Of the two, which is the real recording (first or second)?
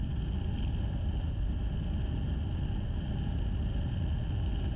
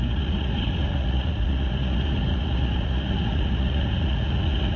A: first